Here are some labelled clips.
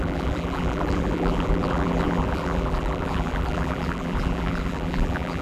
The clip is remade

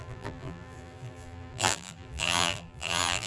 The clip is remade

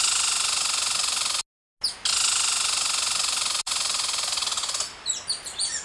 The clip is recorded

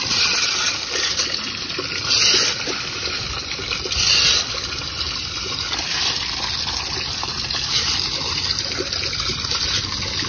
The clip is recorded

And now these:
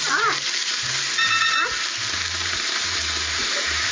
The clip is remade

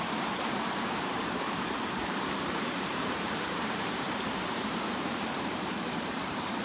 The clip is remade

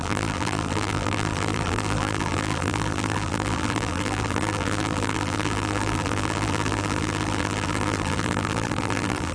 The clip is remade